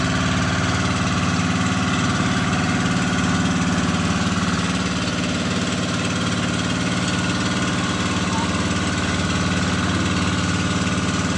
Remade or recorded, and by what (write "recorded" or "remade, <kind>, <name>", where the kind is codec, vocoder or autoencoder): recorded